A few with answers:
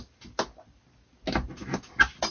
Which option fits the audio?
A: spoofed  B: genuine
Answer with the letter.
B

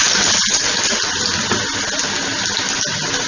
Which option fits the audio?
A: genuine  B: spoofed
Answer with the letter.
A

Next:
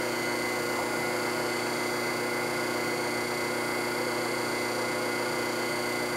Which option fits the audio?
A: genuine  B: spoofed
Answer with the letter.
A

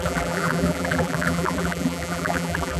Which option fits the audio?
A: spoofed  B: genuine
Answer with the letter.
A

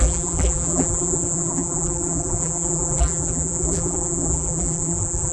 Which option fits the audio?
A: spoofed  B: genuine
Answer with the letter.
A